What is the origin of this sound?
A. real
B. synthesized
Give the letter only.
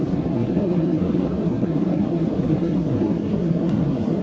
B